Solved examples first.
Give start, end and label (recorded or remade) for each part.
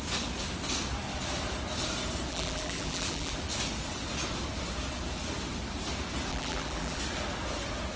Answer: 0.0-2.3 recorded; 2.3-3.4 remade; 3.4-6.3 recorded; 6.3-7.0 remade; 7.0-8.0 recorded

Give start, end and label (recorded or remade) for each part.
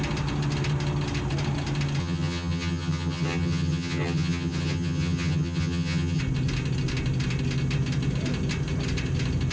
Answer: 0.0-2.0 recorded; 2.0-6.2 remade; 6.2-9.5 recorded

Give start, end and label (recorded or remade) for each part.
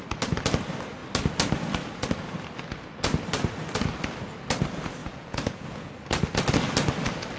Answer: 0.0-5.0 recorded; 5.0-5.9 remade; 5.9-7.4 recorded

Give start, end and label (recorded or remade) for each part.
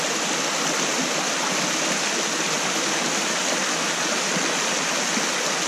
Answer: 0.0-5.7 recorded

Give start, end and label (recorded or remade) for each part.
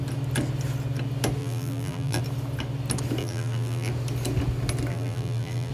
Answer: 0.0-1.4 recorded; 1.4-2.2 remade; 2.2-3.2 recorded; 3.2-3.9 remade; 3.9-4.9 recorded; 4.9-5.7 remade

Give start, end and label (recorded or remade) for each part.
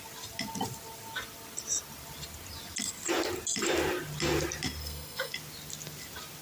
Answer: 0.0-4.8 recorded; 4.8-5.3 remade; 5.3-6.4 recorded